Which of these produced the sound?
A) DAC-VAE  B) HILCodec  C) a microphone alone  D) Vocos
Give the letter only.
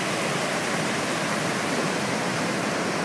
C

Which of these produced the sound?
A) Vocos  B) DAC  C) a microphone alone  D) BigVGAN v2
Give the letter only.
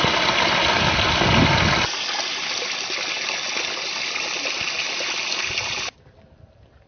C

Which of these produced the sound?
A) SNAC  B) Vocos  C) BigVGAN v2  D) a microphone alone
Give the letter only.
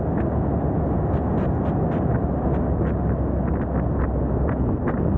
D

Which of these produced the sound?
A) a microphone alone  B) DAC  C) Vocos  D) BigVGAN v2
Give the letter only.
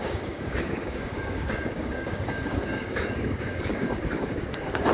B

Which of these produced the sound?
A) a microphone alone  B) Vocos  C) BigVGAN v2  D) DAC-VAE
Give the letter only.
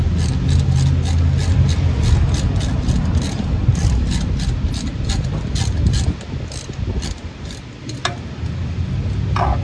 A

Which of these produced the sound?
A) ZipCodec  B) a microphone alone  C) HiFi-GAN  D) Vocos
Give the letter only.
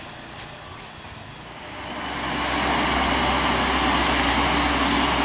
B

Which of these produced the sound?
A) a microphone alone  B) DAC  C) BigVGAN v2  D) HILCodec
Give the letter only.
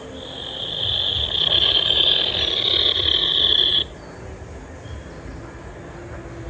A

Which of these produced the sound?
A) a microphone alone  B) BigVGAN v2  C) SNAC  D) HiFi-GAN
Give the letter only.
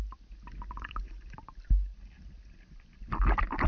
A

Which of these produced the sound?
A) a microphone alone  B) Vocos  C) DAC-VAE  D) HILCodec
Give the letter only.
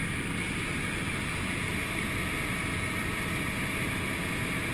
A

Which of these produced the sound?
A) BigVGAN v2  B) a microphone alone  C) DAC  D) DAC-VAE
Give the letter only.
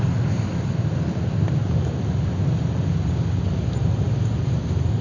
B